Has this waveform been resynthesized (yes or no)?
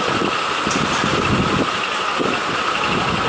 no